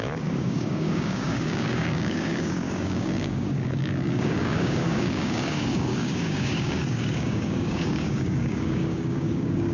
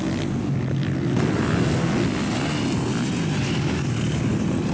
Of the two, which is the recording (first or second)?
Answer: second